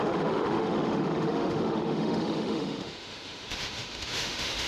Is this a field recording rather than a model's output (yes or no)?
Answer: no